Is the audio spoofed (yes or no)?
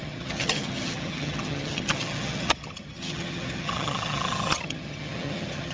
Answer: yes